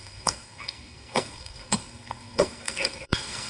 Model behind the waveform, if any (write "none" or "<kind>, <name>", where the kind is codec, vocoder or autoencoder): codec, SNAC